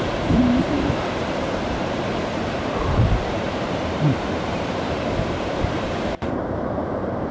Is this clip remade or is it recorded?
remade